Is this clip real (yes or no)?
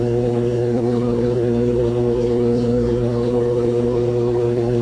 no